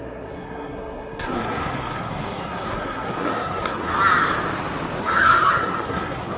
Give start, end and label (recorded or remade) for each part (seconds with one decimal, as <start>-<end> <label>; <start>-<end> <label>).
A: 0.0-3.9 remade; 3.9-5.0 recorded; 5.0-6.4 remade